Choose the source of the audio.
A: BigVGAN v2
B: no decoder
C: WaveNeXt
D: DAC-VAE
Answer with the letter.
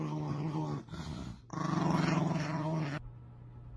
B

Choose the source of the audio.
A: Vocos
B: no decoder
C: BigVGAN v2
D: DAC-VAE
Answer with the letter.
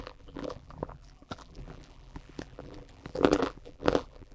C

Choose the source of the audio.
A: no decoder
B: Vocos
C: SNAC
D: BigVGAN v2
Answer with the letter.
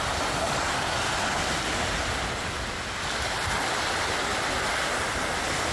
A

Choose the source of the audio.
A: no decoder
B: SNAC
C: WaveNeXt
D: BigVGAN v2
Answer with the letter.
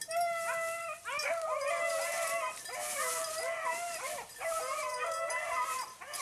D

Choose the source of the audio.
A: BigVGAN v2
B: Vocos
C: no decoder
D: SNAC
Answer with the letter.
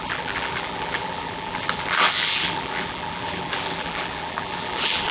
A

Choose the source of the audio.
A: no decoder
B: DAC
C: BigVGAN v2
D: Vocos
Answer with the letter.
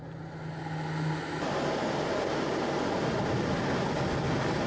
A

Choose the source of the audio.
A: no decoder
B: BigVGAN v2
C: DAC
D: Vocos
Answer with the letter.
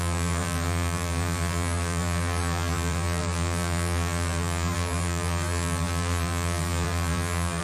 B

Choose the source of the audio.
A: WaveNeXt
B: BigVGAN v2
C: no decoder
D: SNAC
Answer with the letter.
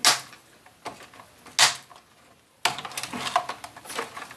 C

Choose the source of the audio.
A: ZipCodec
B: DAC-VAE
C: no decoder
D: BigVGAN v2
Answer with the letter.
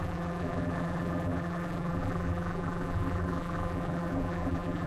D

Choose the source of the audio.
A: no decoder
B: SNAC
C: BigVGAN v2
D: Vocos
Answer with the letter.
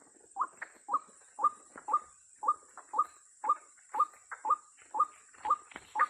C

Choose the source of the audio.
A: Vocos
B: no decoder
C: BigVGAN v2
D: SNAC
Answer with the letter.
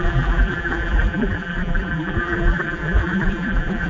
C